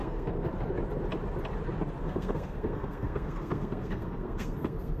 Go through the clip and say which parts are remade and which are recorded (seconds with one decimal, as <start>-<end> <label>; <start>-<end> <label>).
0.0-0.5 remade; 0.5-2.0 recorded; 2.0-5.0 remade